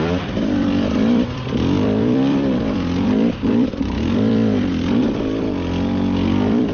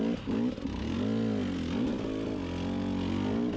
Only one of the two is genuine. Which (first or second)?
second